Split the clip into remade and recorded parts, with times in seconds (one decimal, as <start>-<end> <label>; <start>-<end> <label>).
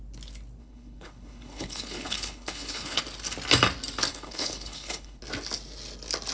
0.0-0.6 recorded; 0.6-3.0 remade; 3.0-4.1 recorded; 4.1-5.2 remade; 5.2-6.3 recorded